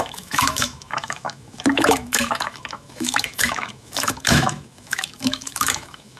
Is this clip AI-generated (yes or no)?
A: yes